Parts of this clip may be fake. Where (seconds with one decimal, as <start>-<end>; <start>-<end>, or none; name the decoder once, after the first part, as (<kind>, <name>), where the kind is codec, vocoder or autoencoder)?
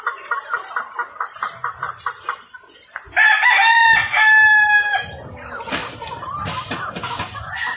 none